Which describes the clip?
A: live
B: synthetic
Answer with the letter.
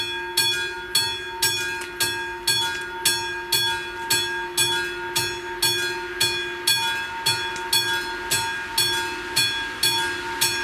A